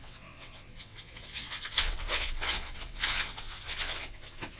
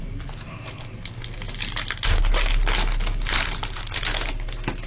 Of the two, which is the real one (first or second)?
second